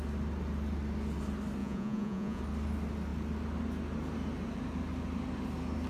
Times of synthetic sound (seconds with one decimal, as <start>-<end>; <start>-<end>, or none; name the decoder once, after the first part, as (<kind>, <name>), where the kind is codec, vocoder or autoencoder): 1.6-2.4 (vocoder, Vocos)